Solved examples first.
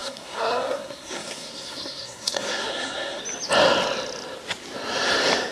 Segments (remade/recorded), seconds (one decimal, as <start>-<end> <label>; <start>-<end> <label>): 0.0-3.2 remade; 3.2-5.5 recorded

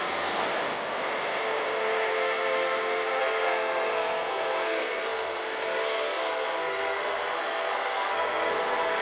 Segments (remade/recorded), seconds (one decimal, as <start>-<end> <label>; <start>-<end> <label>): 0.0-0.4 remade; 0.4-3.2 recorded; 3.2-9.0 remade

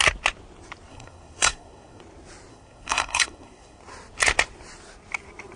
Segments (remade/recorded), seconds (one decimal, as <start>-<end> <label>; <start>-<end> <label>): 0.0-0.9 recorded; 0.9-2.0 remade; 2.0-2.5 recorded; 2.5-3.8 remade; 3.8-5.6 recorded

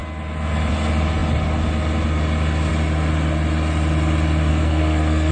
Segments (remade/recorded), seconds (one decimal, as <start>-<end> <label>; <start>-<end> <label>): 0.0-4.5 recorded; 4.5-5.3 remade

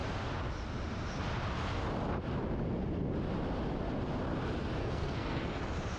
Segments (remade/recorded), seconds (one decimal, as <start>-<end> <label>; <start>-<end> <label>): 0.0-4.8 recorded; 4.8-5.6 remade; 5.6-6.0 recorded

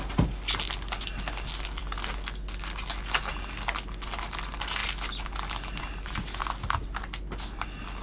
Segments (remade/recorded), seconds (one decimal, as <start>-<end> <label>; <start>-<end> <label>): 0.0-8.0 recorded

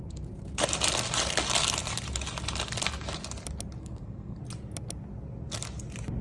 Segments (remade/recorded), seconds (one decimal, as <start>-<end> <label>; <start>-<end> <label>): 0.0-3.8 recorded; 3.8-4.4 remade; 4.4-6.2 recorded